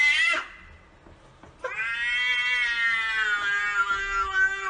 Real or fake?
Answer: real